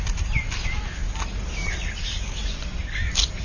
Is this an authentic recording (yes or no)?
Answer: yes